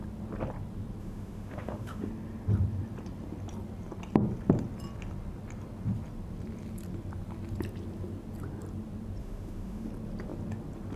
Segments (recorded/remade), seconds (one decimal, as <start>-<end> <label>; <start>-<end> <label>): 0.0-1.0 recorded; 1.0-2.1 remade; 2.1-9.2 recorded; 9.2-9.9 remade; 9.9-11.0 recorded